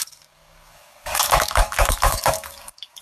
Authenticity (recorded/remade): remade